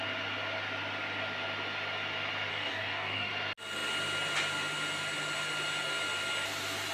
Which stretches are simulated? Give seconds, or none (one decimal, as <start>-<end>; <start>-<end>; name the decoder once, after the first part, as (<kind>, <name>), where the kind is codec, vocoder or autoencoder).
2.5-3.3 (codec, DAC)